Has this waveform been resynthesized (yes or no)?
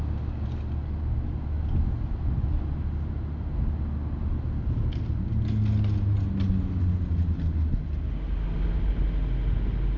no